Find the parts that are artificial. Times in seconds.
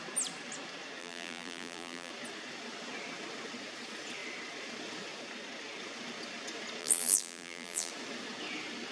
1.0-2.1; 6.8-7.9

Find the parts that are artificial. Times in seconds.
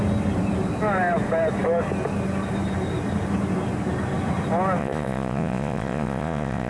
4.8-6.7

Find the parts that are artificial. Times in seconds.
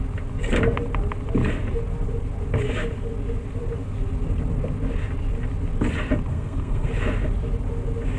6.3-6.9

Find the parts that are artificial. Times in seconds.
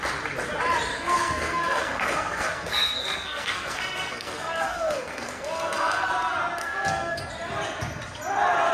0.9-6.1; 6.6-7.2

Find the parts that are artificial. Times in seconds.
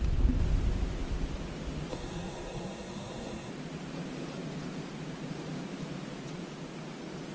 1.9-3.5